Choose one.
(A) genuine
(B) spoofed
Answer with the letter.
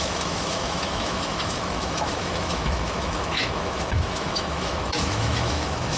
B